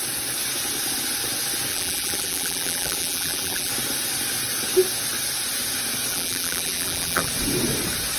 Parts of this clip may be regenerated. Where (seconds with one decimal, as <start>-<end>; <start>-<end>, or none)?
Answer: 1.7-3.7; 6.1-7.3